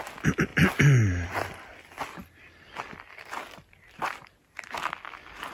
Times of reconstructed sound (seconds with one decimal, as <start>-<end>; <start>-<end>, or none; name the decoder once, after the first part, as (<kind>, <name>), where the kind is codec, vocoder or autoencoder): none